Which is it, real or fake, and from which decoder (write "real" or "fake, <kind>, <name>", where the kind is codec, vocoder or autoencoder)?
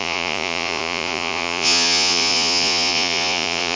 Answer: fake, vocoder, Vocos